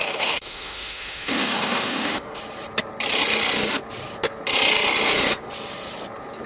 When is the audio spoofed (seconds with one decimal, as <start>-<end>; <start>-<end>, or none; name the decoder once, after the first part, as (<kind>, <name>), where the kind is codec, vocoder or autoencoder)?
0.0-2.4 (autoencoder, DAC-VAE)

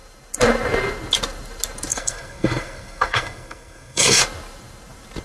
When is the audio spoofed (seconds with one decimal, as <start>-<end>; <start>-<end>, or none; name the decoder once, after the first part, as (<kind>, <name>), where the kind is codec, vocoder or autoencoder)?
1.9-4.2 (codec, SNAC)